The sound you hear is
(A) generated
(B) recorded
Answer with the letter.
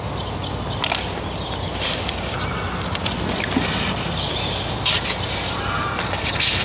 B